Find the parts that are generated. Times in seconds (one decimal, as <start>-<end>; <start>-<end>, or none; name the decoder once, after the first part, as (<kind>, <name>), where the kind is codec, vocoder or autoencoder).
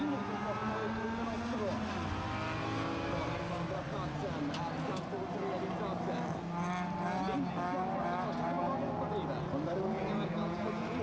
10.0-11.0 (vocoder, Vocos)